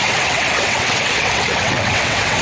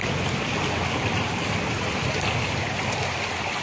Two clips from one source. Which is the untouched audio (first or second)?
second